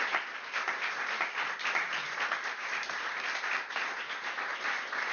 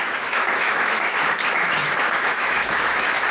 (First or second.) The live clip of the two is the first